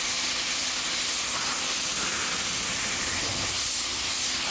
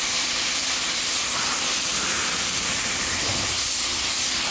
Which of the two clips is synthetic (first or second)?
second